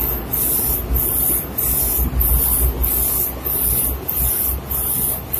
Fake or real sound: real